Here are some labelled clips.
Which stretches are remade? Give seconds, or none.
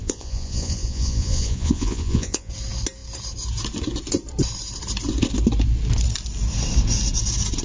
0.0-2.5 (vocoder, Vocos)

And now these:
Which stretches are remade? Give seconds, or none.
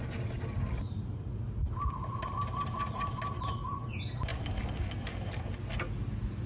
none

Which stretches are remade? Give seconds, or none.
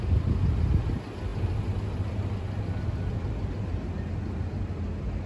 none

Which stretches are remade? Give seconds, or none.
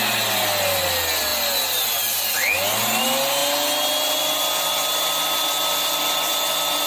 none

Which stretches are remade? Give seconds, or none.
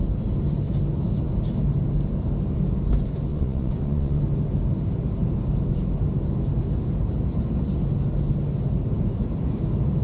3.3-4.2 (vocoder, Vocos)